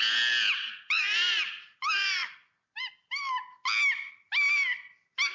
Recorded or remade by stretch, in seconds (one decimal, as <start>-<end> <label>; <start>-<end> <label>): 0.0-5.3 recorded